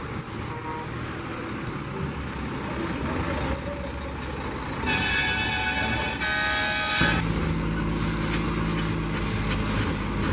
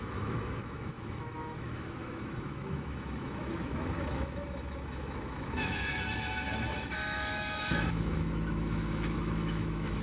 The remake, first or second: second